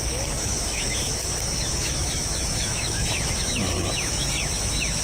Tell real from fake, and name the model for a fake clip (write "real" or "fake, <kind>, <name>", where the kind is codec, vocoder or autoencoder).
fake, autoencoder, DAC-VAE